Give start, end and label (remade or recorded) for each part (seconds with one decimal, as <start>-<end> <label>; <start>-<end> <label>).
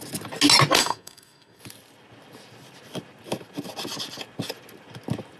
0.0-0.8 recorded; 0.8-1.6 remade; 1.6-5.4 recorded